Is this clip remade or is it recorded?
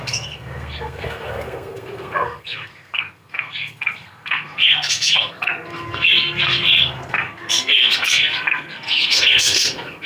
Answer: remade